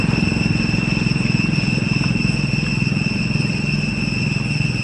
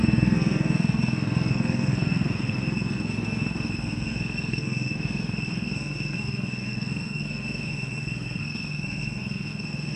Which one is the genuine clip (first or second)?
first